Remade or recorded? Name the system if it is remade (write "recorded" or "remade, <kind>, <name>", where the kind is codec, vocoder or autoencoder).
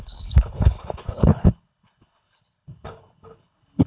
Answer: remade, codec, HILCodec